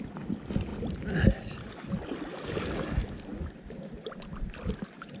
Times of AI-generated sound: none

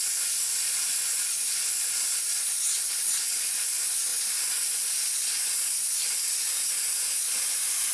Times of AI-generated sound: none

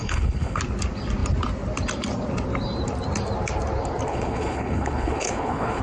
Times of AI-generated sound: 0.0-0.6 (codec, HILCodec); 4.1-5.8

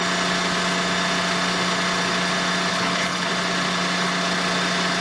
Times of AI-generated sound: 2.7-3.3 (codec, HILCodec)

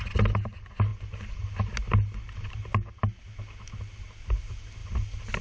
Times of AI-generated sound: none